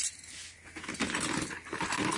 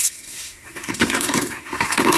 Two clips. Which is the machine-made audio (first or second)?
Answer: second